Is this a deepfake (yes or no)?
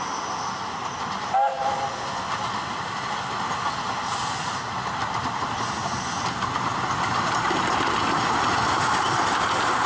no